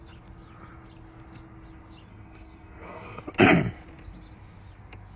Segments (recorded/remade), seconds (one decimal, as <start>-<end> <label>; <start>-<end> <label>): 0.0-2.1 recorded; 2.1-3.2 remade; 3.2-5.2 recorded